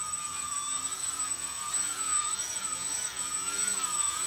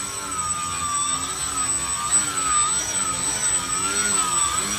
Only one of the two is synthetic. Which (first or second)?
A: first